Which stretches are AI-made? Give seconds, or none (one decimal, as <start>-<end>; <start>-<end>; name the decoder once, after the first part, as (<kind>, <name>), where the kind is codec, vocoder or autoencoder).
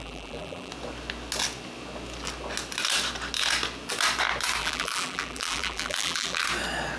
0.0-0.7 (vocoder, BigVGAN v2); 4.6-6.4